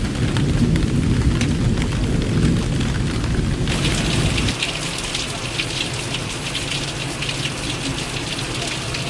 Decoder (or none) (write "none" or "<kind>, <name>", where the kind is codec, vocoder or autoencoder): none